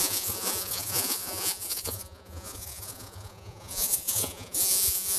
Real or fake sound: fake